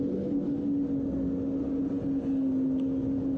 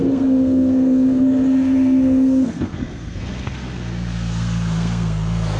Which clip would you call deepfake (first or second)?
second